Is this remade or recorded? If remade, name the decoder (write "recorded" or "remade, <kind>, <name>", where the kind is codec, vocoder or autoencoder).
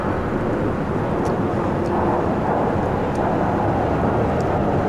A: recorded